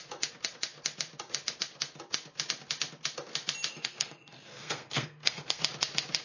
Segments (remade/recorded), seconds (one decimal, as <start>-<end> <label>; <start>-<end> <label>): 0.0-3.7 recorded; 3.7-5.6 remade; 5.6-6.2 recorded